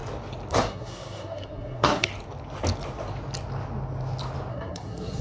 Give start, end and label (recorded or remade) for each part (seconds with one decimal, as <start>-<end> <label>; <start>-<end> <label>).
0.0-0.5 recorded; 0.5-2.1 remade; 2.1-4.5 recorded; 4.5-5.2 remade